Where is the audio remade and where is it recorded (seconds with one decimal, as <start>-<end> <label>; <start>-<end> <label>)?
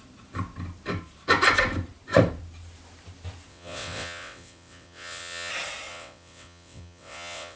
0.0-3.5 recorded; 3.5-5.5 remade; 5.5-5.9 recorded; 5.9-7.6 remade